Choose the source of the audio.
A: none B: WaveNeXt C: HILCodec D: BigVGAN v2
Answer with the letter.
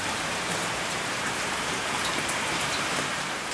D